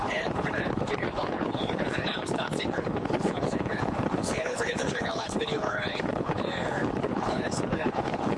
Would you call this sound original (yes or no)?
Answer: no